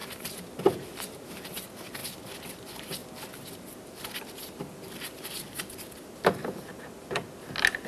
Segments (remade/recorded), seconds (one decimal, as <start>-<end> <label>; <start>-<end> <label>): 0.0-1.6 remade; 1.6-7.9 recorded